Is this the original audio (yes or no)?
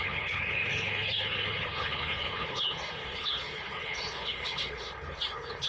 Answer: no